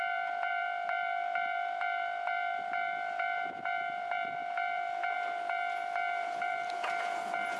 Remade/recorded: remade